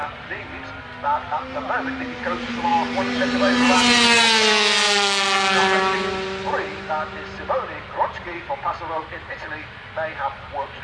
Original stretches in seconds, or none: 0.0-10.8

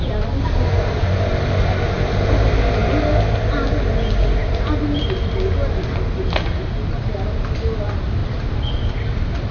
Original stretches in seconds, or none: 0.0-9.5

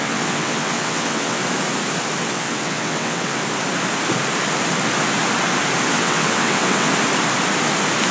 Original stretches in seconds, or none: 1.4-2.2; 3.4-5.9; 6.9-8.1